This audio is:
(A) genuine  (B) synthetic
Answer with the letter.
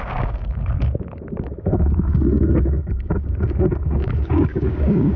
B